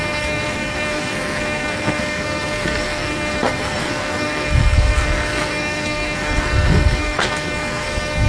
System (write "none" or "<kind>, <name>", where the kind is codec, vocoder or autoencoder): codec, SNAC